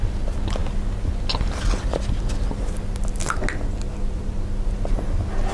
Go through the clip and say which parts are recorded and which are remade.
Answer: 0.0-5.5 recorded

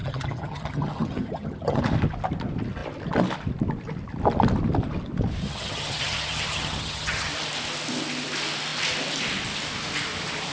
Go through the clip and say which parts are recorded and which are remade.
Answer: 0.0-1.8 remade; 1.8-5.4 recorded; 5.4-7.3 remade; 7.3-10.5 recorded

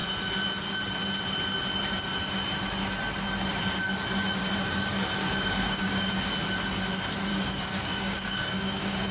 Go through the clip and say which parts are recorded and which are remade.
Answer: 0.0-5.2 recorded; 5.2-6.1 remade; 6.1-7.3 recorded; 7.3-9.1 remade

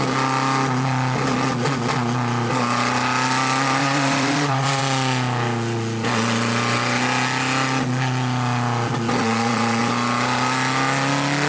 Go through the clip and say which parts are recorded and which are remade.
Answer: 0.0-3.8 recorded; 3.8-4.8 remade; 4.8-9.2 recorded; 9.2-9.8 remade; 9.8-11.5 recorded

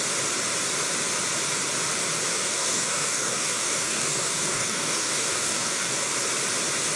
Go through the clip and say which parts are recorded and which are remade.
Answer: 0.0-2.3 recorded; 2.3-6.1 remade; 6.1-7.0 recorded